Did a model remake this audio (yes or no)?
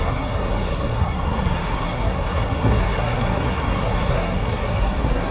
yes